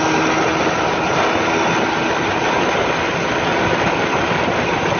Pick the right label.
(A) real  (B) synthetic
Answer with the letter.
A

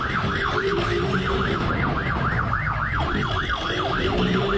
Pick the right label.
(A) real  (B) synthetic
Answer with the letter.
A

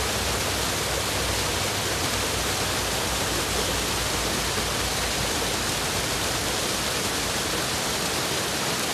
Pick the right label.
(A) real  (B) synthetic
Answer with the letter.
A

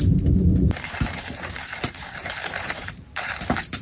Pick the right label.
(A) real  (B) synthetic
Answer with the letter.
B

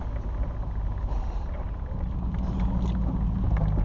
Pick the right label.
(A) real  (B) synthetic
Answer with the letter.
A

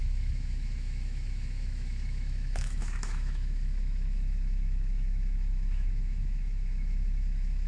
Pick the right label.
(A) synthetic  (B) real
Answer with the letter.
A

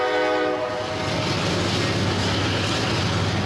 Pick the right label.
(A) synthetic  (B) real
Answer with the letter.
B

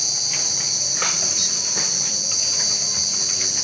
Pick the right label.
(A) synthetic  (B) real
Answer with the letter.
B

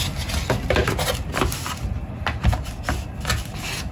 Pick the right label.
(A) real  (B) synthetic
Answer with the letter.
A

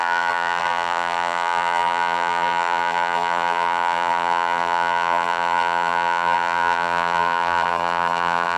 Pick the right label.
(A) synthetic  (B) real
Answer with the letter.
A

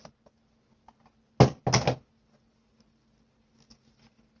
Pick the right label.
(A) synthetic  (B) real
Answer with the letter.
B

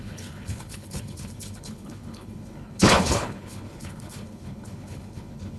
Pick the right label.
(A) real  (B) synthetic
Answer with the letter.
B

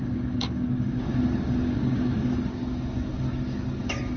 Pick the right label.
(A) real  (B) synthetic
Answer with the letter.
B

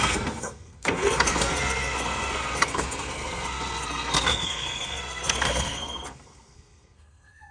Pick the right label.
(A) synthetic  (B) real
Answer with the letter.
A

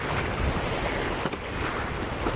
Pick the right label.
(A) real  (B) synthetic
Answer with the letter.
A